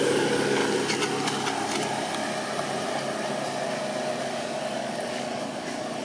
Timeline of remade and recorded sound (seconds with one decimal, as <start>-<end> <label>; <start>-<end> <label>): 0.0-0.6 remade; 0.6-4.2 recorded; 4.2-6.0 remade